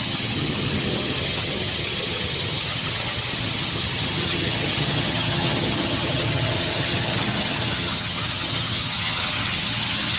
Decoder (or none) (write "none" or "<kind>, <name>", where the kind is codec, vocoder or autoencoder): vocoder, HiFi-GAN